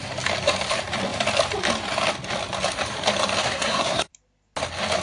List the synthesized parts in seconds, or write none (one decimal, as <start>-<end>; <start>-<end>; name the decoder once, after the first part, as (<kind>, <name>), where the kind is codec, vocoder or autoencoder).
3.4-4.1 (codec, SNAC)